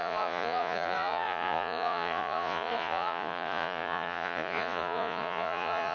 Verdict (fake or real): fake